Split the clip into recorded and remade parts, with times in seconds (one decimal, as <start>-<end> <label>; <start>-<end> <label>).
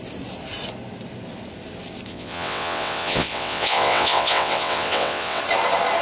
0.0-2.1 recorded; 2.1-5.4 remade; 5.4-6.0 recorded